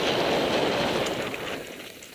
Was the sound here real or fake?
real